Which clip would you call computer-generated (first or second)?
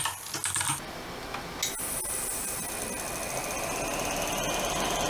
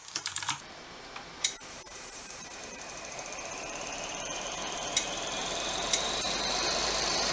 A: second